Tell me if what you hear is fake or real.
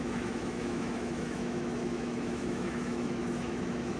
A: fake